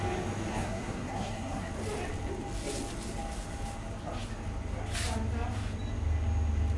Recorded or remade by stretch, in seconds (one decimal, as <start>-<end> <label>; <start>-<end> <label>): 0.0-0.5 recorded; 0.5-1.7 remade; 1.7-6.8 recorded